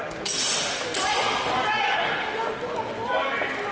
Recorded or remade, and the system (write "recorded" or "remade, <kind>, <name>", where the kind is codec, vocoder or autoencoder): recorded